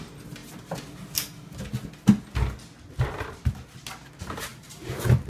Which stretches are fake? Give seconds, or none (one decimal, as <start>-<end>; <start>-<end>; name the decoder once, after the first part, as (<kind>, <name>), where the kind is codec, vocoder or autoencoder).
4.5-5.3 (vocoder, BigVGAN v2)